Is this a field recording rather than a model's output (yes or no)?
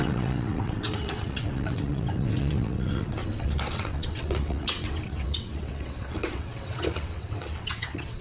no